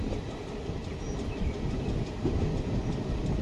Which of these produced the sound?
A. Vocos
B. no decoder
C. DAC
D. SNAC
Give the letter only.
B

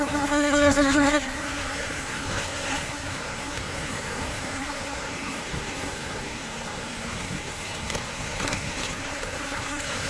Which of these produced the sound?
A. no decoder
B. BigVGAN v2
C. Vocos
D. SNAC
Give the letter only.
D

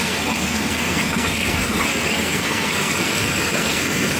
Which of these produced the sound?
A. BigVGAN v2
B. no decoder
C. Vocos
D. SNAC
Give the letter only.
D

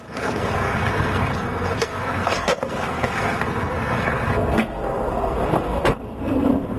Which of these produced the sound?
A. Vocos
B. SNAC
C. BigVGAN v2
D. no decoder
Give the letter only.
B